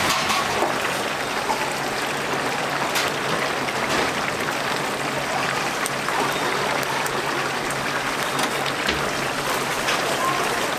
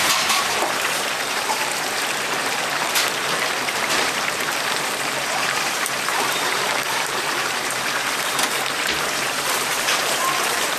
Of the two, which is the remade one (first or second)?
second